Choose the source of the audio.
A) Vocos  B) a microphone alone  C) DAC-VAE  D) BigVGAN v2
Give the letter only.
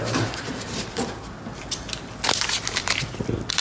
B